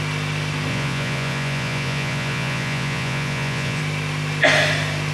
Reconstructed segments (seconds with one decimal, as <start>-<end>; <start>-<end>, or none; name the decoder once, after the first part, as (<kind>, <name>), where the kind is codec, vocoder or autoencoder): 0.7-3.8 (vocoder, Vocos)